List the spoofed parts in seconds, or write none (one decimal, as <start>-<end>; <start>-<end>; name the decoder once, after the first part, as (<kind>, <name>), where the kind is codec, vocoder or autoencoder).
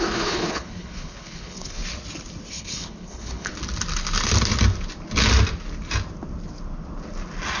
0.0-1.8 (codec, HILCodec); 2.5-3.5